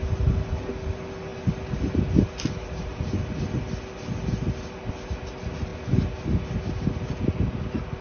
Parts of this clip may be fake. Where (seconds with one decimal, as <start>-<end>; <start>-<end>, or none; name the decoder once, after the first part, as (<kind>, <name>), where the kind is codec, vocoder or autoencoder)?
none